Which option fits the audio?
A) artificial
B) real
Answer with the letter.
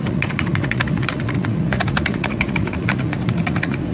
A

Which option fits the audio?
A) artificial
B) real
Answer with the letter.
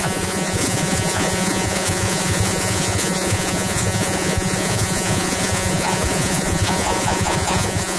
A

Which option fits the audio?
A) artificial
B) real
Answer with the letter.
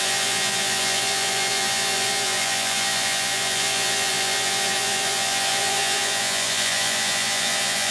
A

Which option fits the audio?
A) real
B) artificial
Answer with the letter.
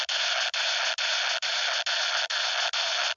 A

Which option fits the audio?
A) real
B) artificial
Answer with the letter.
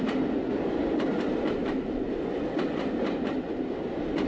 A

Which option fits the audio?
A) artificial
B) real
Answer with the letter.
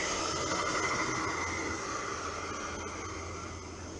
B